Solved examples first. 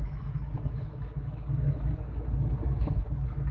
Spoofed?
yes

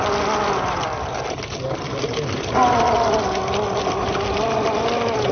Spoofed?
no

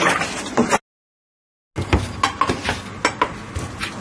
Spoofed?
no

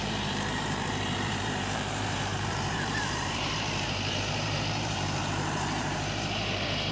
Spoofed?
yes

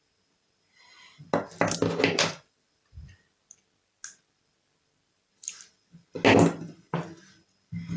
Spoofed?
no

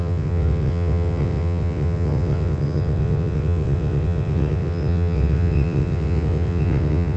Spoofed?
yes